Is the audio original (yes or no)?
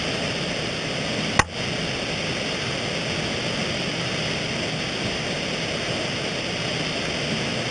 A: yes